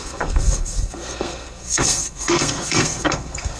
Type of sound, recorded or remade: remade